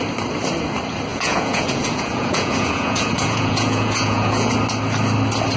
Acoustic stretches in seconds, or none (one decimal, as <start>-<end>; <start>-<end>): 0.0-1.1; 4.5-5.6